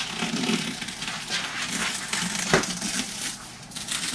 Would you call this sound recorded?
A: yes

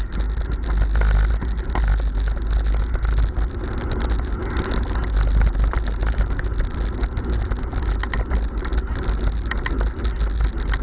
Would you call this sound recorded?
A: yes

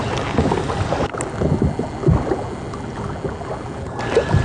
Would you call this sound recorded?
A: yes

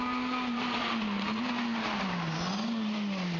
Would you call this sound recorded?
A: yes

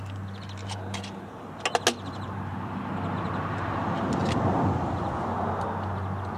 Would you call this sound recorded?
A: yes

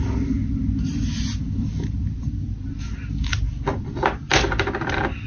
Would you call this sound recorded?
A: yes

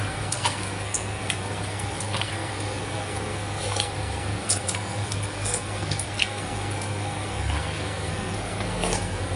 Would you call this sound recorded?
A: no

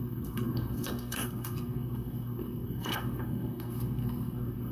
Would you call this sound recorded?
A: no